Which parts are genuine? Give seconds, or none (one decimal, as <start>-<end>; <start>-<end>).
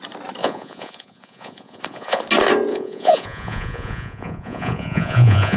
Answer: 0.0-0.4; 2.2-2.7